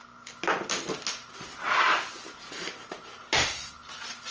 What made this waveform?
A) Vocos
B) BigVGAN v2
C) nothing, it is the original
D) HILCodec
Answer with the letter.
C